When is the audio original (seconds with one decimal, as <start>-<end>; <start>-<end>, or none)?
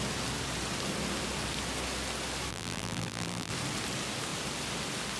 0.0-2.5; 3.5-5.2